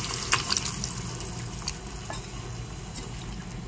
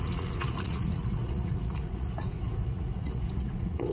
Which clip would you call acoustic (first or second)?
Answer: first